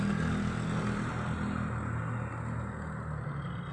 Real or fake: real